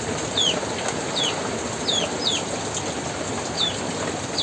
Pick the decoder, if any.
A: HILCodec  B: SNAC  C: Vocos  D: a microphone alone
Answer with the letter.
D